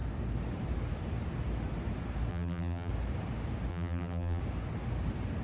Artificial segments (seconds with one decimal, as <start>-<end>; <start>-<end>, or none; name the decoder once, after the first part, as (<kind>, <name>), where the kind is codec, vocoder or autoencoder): 2.3-2.9 (vocoder, BigVGAN v2); 3.7-4.4